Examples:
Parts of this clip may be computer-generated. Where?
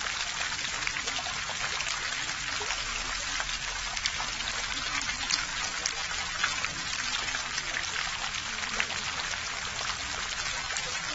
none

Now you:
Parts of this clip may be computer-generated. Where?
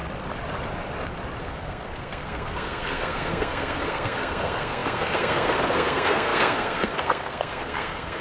1.4-8.2 (codec, SNAC)